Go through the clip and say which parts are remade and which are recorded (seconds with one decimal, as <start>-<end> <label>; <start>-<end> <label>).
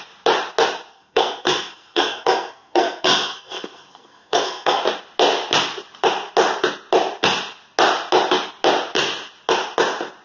0.0-0.9 recorded; 0.9-4.8 remade; 4.8-10.2 recorded